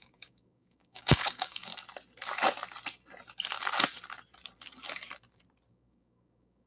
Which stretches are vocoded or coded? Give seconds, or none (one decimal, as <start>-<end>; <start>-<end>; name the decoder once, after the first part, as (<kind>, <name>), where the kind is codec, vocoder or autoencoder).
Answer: 0.0-1.7 (codec, DAC); 5.7-6.7